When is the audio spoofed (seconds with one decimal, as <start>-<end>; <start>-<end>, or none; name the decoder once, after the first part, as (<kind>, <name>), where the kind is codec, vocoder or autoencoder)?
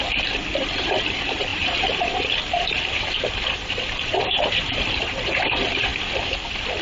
1.5-4.7 (vocoder, BigVGAN v2)